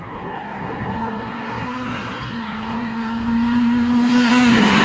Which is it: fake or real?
fake